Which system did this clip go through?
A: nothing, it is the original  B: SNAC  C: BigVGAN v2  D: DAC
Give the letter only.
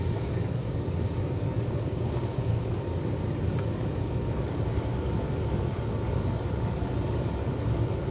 D